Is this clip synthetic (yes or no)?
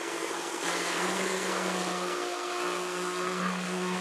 yes